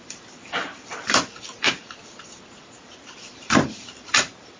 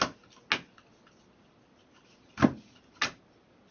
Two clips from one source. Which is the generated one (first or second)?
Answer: first